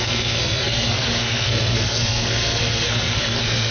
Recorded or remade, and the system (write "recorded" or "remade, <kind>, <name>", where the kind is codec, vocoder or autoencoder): remade, codec, SNAC